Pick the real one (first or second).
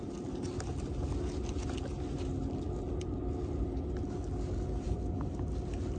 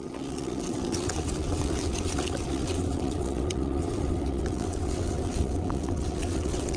first